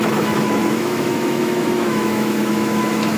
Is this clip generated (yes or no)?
yes